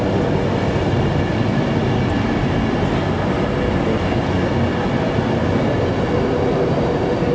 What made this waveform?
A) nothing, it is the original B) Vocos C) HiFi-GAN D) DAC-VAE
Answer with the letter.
A